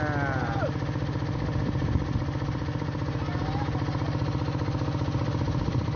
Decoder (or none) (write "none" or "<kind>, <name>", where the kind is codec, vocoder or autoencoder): none